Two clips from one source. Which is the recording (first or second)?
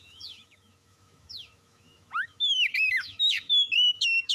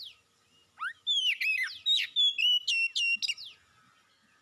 second